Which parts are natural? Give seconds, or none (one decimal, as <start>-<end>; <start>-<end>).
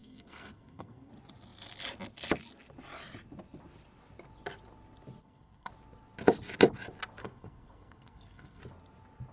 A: 1.1-5.2; 5.7-7.2; 8.6-9.3